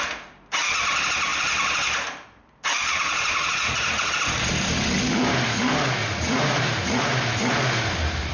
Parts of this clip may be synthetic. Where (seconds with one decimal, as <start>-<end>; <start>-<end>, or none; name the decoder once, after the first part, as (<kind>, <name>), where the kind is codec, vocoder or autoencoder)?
2.9-4.1 (vocoder, Vocos); 6.0-6.6